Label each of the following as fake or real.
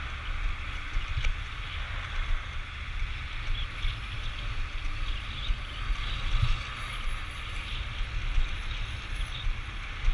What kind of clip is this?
real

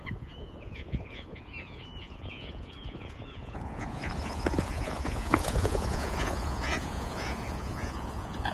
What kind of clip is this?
fake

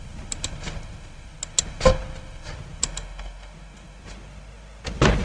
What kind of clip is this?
real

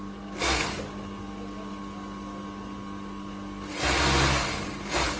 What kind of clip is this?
real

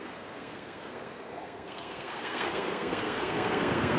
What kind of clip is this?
fake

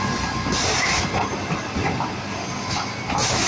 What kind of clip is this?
real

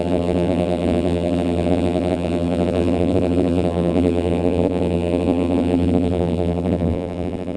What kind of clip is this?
fake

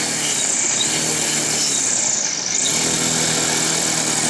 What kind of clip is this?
real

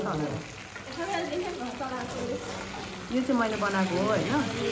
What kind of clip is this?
real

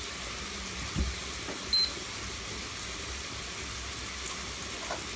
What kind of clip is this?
real